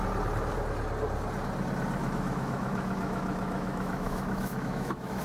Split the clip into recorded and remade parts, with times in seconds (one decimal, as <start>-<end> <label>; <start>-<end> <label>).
0.0-2.0 recorded; 2.0-5.2 remade